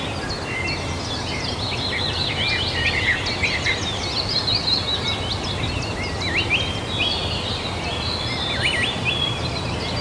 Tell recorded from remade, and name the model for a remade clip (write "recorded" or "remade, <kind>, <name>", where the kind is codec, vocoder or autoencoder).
recorded